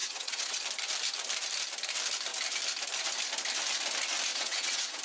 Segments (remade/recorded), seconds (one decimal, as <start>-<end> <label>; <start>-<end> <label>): 0.0-0.6 remade; 0.6-4.3 recorded; 4.3-5.0 remade